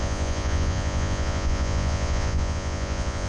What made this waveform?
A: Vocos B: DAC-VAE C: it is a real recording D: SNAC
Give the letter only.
A